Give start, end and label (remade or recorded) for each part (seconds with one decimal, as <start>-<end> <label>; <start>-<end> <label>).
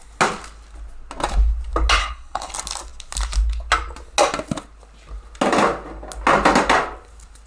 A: 0.0-2.0 recorded; 2.0-2.5 remade; 2.5-7.5 recorded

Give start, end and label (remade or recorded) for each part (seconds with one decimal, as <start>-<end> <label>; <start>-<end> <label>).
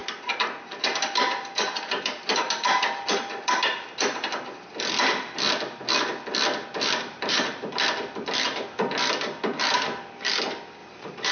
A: 0.0-4.3 remade; 4.3-7.1 recorded; 7.1-7.7 remade; 7.7-10.8 recorded; 10.8-11.3 remade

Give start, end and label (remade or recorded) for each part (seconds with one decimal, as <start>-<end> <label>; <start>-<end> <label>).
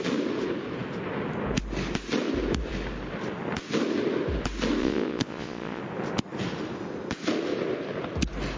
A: 0.0-4.8 recorded; 4.8-5.8 remade; 5.8-8.6 recorded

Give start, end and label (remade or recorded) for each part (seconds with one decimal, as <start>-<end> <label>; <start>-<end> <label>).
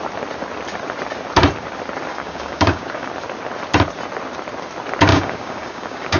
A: 0.0-2.1 recorded; 2.1-3.1 remade; 3.1-5.1 recorded; 5.1-6.2 remade